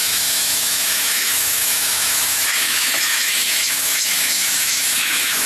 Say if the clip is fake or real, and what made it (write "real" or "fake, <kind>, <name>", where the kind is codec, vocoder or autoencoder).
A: fake, autoencoder, DAC-VAE